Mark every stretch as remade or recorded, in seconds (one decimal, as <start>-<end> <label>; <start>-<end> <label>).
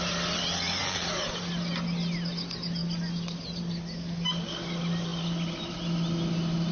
0.0-6.7 recorded